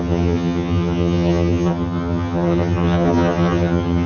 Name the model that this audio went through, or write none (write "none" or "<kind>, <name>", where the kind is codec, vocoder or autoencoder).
vocoder, HiFi-GAN